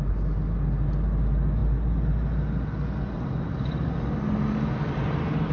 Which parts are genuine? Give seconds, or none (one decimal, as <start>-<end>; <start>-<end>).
0.0-5.5